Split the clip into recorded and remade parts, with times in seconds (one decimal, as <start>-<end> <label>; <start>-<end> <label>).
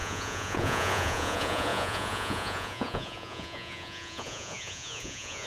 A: 0.0-5.5 remade